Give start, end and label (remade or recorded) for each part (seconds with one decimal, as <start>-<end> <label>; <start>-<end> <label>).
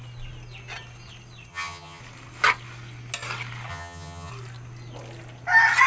0.0-1.5 recorded; 1.5-2.0 remade; 2.0-3.7 recorded; 3.7-4.3 remade; 4.3-5.9 recorded